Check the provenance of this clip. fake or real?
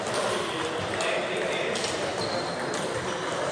real